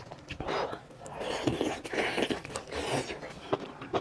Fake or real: real